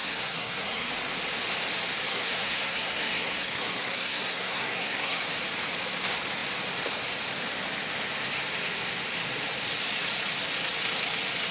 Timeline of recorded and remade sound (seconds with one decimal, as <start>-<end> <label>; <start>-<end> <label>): 0.0-0.9 remade; 0.9-2.1 recorded; 2.1-5.2 remade; 5.2-11.5 recorded